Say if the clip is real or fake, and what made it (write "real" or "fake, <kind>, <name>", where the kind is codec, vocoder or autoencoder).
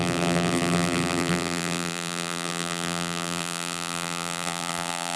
fake, vocoder, BigVGAN v2